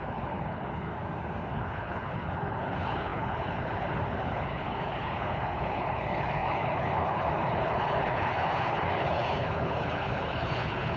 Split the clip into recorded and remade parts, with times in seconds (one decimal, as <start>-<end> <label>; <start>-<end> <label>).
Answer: 0.0-0.9 remade; 0.9-1.5 recorded; 1.5-11.0 remade